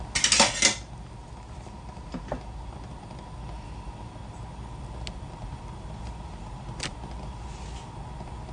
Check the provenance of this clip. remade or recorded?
recorded